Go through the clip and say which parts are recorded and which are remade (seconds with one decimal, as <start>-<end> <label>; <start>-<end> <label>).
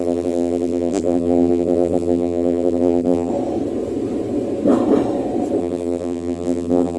0.0-3.3 remade; 3.3-5.6 recorded; 5.6-7.0 remade